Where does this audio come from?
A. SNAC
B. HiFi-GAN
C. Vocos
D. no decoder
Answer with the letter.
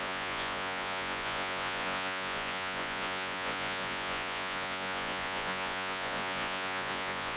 C